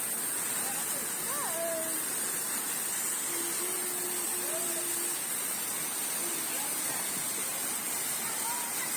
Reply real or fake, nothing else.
real